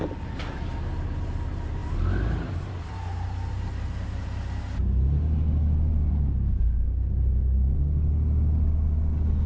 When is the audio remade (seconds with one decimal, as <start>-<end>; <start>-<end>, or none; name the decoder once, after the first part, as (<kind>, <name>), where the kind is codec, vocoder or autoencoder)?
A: none